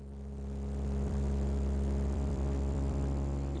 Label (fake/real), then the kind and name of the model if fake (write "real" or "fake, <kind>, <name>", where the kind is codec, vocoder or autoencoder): fake, vocoder, BigVGAN v2